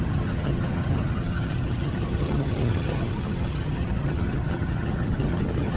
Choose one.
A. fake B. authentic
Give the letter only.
A